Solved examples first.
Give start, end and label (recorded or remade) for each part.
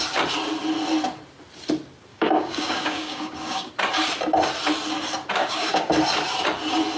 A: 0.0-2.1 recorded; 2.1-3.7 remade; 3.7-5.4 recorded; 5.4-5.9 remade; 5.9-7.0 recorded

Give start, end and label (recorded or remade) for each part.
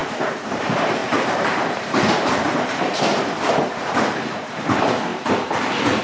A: 0.0-0.6 remade; 0.6-1.0 recorded; 1.0-4.6 remade; 4.6-5.1 recorded; 5.1-6.0 remade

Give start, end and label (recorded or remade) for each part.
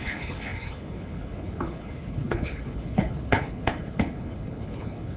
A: 0.0-5.2 remade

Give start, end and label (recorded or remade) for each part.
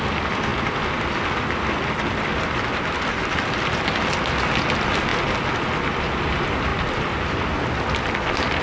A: 0.0-8.6 recorded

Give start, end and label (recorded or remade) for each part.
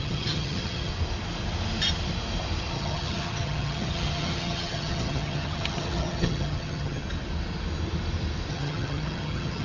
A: 0.0-0.9 remade; 0.9-2.7 recorded; 2.7-7.0 remade; 7.0-8.5 recorded; 8.5-9.6 remade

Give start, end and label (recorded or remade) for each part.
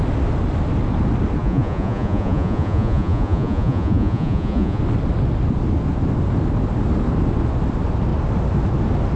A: 0.0-1.4 recorded; 1.4-4.8 remade; 4.8-9.2 recorded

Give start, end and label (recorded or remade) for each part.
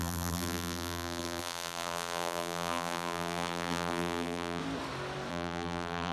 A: 0.0-4.6 remade; 4.6-5.3 recorded; 5.3-6.1 remade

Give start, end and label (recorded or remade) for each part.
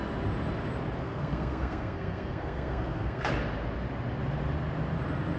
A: 0.0-1.0 recorded; 1.0-3.3 remade; 3.3-5.4 recorded